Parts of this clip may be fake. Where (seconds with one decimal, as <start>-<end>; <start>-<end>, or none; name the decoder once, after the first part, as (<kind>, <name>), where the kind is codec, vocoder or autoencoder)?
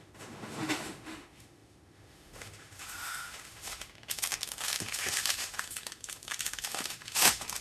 0.0-7.6 (autoencoder, DAC-VAE)